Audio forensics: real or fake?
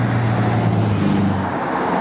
real